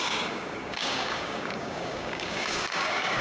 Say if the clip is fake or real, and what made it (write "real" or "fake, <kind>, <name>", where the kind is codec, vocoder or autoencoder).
fake, codec, DAC